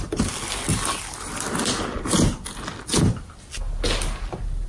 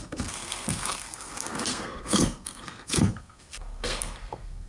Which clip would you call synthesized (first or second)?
second